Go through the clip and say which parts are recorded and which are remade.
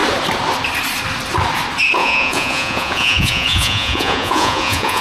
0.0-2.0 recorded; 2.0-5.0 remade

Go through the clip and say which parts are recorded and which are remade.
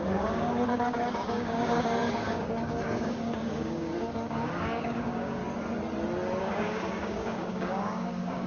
0.0-5.4 remade; 5.4-6.4 recorded; 6.4-8.5 remade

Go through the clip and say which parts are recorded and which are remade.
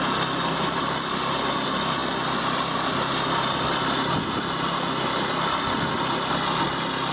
0.0-7.1 recorded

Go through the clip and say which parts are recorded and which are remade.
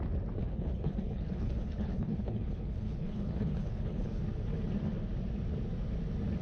0.0-0.4 recorded; 0.4-4.2 remade; 4.2-6.4 recorded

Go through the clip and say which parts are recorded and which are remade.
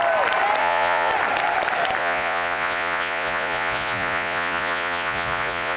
0.0-0.6 recorded; 0.6-1.1 remade; 1.1-2.0 recorded; 2.0-5.8 remade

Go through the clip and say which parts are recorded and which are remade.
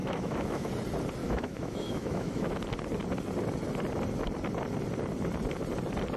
0.0-0.7 remade; 0.7-1.2 recorded; 1.2-2.6 remade; 2.6-6.2 recorded